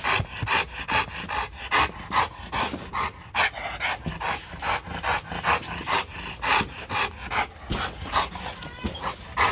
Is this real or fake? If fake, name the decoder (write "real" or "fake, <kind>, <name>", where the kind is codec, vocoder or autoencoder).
real